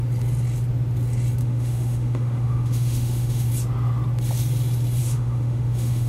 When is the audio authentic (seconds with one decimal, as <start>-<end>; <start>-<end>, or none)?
0.0-1.4; 3.5-5.0